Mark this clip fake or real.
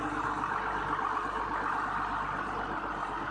real